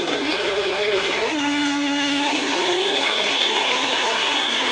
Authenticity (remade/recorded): remade